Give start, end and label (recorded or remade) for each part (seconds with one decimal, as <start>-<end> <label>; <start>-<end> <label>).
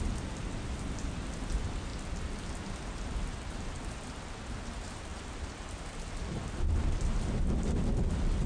0.0-8.5 recorded